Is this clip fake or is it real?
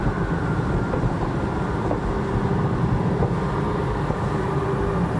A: fake